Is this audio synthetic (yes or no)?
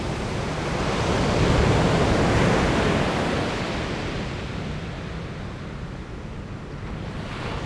no